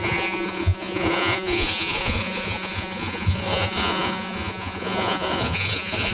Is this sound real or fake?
fake